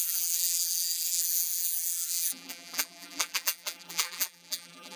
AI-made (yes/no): yes